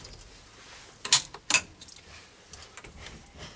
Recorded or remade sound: recorded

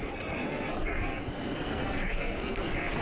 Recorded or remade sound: remade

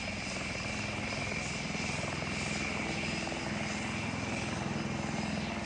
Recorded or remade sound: recorded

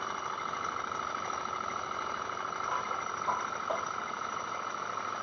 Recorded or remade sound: recorded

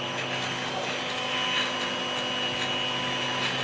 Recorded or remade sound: recorded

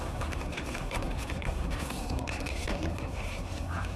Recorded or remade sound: remade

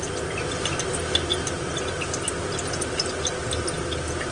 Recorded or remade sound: recorded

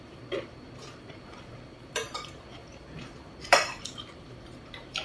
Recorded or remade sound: remade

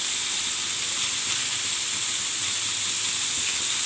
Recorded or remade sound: recorded